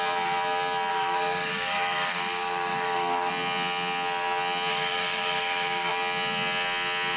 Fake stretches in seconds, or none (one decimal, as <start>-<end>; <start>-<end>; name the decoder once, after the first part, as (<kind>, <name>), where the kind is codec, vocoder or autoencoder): 0.9-3.3 (codec, DAC); 4.7-5.9